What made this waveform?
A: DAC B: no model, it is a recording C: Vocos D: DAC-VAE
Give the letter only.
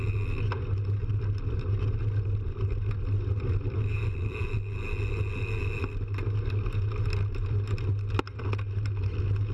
B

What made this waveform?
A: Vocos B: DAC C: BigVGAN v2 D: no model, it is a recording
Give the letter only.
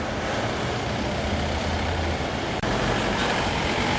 C